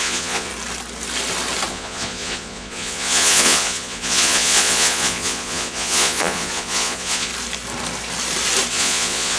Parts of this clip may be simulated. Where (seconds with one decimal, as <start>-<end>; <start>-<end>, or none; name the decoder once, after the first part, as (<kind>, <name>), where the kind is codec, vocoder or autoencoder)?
0.0-0.5 (vocoder, Vocos); 1.7-7.3; 8.7-9.4